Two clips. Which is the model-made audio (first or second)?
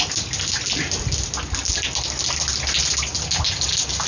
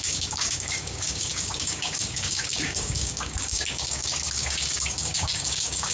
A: second